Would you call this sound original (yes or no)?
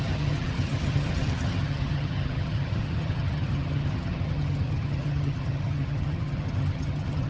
no